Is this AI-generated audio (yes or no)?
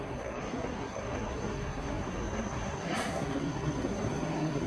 yes